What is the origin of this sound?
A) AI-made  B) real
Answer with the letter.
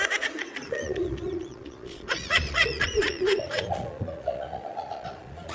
A